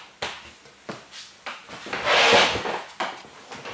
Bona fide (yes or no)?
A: yes